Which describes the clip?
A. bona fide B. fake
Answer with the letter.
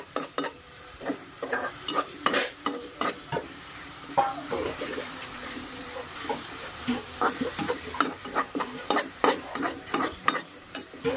B